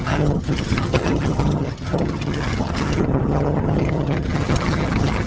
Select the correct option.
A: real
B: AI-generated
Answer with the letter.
B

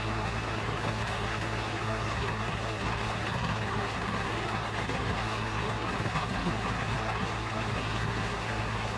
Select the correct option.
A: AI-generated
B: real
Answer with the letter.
A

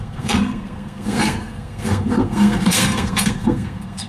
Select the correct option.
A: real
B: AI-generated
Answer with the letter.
B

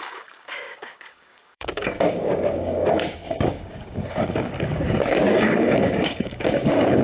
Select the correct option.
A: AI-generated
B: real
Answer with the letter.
A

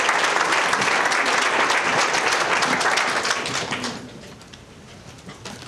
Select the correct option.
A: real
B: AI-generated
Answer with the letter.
A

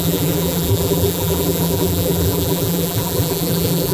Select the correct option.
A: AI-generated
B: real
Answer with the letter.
A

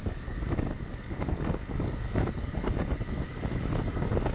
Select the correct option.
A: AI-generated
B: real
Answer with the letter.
A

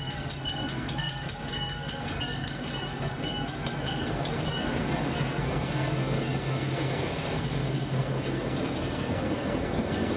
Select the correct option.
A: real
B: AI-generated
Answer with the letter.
B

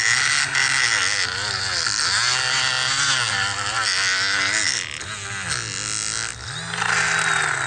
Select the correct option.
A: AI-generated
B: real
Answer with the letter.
B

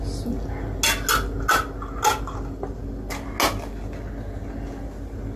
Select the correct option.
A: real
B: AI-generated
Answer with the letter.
A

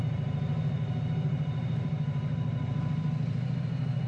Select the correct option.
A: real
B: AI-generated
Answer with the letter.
B